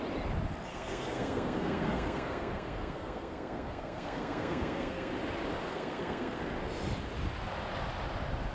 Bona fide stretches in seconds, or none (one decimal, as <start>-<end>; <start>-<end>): 0.0-0.7; 5.1-5.7; 6.4-8.5